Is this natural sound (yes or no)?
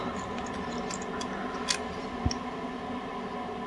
yes